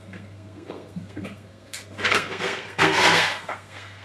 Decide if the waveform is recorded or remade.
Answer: remade